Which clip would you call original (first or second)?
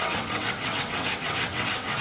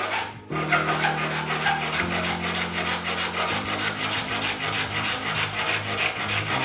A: second